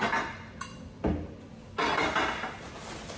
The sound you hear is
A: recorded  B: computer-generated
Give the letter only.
A